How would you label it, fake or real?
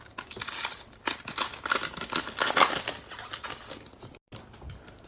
real